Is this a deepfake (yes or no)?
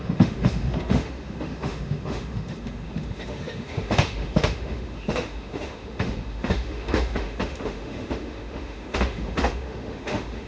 yes